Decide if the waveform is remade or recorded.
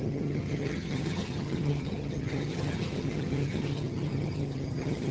remade